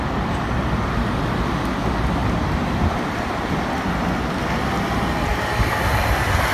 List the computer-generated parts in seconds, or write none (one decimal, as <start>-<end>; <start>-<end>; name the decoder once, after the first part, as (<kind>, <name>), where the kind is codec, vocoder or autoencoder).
2.2-3.2 (vocoder, BigVGAN v2)

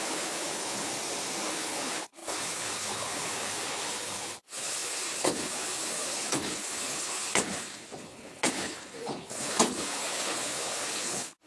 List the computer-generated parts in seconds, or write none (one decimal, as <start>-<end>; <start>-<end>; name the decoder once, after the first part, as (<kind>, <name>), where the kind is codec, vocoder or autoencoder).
0.0-0.9 (codec, HILCodec); 1.5-11.5

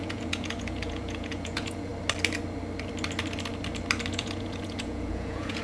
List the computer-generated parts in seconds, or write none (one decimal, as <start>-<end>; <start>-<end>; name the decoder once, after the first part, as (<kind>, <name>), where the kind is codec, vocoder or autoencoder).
0.0-1.9 (vocoder, Vocos); 4.1-5.6

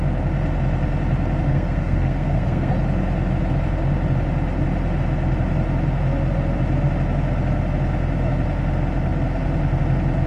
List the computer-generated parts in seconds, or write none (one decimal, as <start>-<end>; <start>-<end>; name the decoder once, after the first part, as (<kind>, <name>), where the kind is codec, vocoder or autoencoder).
1.5-2.7 (codec, SNAC)

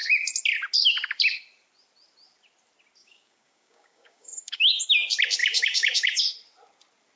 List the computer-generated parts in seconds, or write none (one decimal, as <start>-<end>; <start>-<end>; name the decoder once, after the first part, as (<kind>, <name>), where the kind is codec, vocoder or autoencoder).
3.0-4.8 (codec, DAC); 5.4-6.2

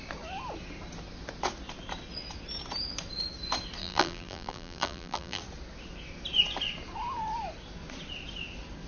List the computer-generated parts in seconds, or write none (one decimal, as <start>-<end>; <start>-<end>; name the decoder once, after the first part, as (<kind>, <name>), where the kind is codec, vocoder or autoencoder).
3.8-5.4 (vocoder, BigVGAN v2)

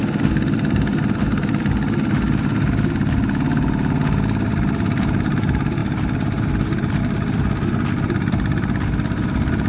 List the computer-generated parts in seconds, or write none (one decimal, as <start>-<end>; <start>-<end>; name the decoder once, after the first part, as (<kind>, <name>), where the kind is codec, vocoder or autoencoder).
5.8-7.0 (vocoder, BigVGAN v2)

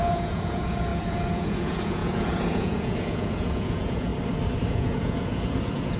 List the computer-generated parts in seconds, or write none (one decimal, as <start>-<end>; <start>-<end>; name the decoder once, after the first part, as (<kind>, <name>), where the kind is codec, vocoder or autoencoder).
0.0-4.1 (vocoder, Vocos); 4.6-6.0